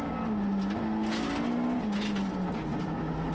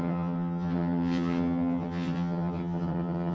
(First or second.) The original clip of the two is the first